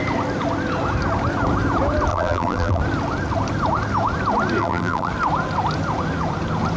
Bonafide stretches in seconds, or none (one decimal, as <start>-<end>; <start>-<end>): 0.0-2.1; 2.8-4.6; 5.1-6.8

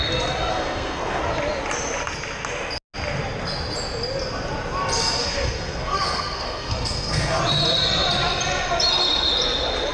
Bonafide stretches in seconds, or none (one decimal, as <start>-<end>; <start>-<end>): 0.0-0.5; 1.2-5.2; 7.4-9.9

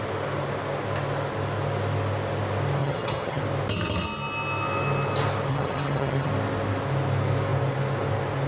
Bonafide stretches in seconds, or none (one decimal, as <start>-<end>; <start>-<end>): 0.0-2.8; 3.4-5.5; 6.3-8.5

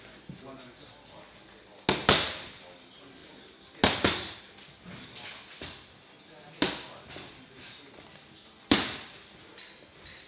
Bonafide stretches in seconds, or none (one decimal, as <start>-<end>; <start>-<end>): 0.0-10.3

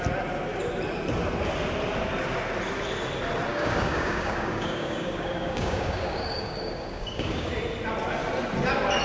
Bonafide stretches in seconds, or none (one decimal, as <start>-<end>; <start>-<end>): 0.0-3.5; 7.5-9.0

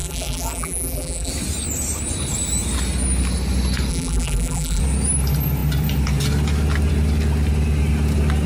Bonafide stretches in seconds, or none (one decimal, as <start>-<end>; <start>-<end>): 1.3-3.9; 4.8-8.5

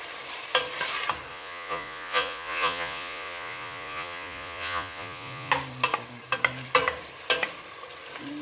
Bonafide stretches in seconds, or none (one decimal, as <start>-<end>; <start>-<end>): 0.0-1.3; 5.5-8.4

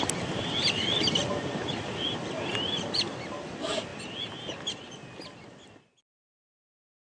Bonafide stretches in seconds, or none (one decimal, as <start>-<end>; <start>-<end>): 0.0-7.0